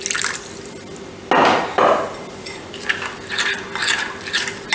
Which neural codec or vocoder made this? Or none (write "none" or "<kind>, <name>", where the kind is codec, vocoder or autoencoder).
none